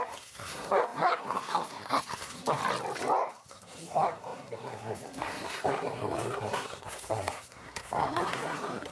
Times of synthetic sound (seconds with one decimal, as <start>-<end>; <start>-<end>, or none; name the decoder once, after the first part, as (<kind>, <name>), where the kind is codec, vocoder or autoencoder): 0.0-2.6 (codec, SNAC); 3.3-8.9